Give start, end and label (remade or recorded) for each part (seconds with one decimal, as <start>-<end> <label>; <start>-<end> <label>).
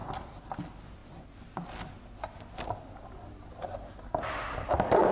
0.0-5.1 recorded